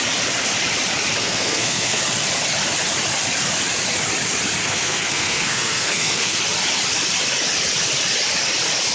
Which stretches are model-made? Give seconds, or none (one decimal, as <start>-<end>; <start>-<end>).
1.2-2.0; 4.6-6.4